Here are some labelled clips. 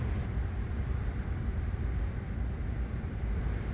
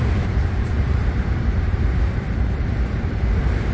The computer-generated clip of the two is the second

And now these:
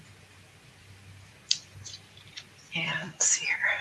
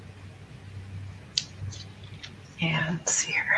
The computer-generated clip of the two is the first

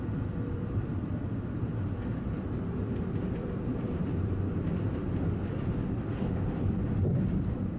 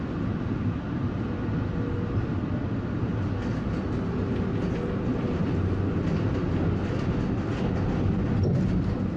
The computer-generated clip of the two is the first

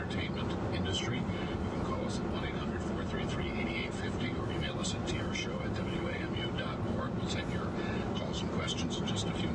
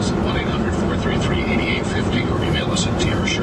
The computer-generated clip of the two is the second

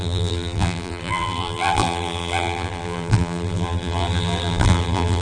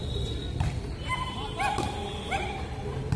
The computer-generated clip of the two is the first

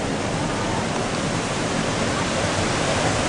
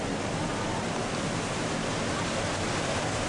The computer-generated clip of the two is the first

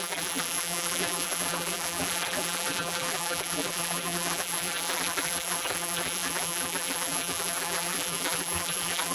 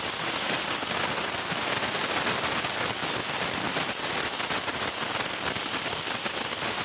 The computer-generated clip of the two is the first